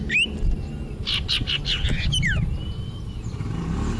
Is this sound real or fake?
real